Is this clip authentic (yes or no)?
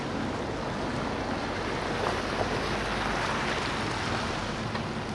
yes